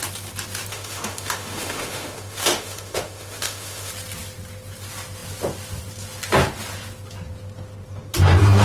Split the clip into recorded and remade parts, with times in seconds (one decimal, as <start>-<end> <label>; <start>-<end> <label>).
0.0-0.7 recorded; 0.7-3.9 remade; 3.9-8.6 recorded